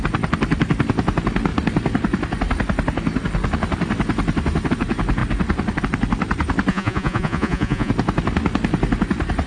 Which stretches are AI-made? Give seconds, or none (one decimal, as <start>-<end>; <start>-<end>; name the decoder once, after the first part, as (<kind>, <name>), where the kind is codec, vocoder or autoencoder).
6.7-7.9 (vocoder, Vocos)